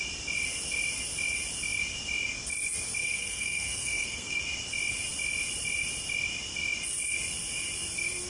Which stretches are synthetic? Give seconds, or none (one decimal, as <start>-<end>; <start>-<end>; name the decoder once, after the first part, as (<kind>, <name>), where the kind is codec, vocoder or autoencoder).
3.0-4.4 (codec, SNAC)